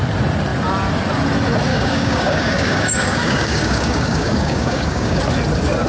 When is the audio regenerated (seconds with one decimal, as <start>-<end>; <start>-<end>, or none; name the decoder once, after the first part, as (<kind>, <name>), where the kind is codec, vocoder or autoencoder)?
1.7-5.2 (codec, DAC)